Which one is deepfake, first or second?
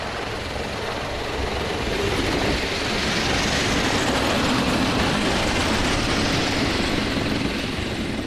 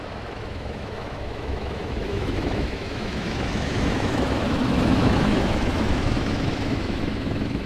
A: second